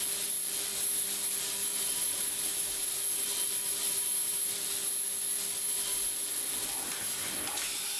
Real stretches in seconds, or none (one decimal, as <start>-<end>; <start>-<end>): 0.0-1.6; 2.9-8.0